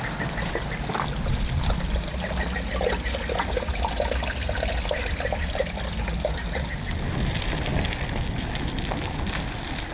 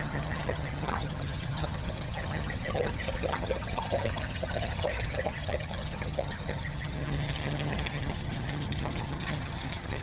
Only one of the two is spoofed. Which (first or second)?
second